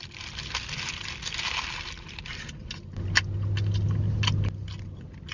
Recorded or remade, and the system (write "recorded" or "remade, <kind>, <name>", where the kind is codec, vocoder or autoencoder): recorded